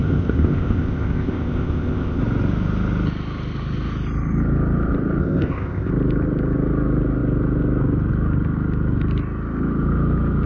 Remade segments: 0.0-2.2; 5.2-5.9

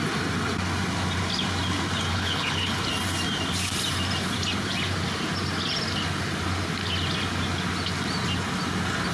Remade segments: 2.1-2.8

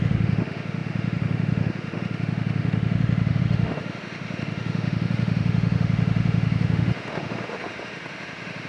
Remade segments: 0.0-8.7

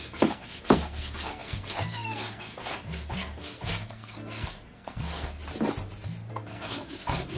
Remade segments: 0.0-5.4; 6.3-7.4

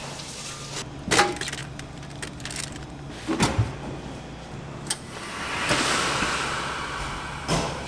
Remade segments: none

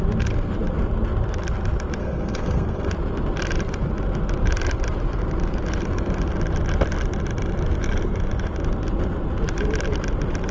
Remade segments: 2.0-2.9

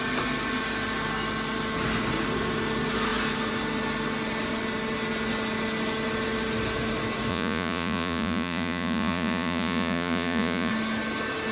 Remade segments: 7.3-10.7

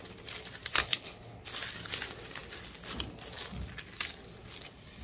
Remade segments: 0.7-1.4